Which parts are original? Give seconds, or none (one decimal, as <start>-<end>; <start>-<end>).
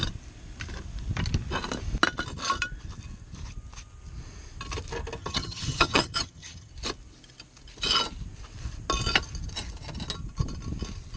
0.0-5.2; 6.7-11.2